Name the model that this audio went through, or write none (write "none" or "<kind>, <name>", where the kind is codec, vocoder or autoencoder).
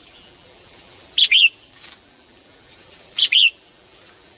vocoder, BigVGAN v2